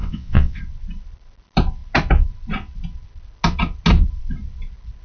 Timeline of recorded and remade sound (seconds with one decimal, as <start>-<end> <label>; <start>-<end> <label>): 0.0-0.6 remade; 0.6-5.0 recorded